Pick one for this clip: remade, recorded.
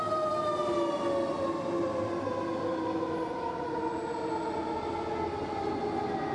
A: recorded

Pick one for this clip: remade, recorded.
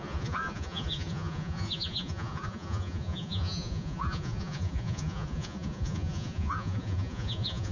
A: remade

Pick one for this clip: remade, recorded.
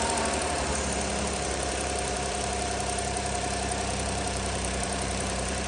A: remade